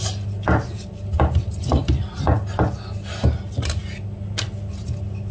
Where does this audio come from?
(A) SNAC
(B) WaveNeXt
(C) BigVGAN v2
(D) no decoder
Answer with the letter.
D